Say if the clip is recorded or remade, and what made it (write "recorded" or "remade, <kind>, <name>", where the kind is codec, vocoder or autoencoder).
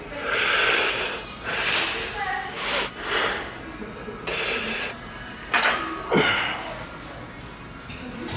recorded